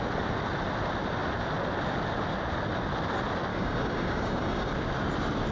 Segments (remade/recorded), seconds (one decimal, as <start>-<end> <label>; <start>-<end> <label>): 0.0-3.5 recorded; 3.5-4.7 remade; 4.7-5.5 recorded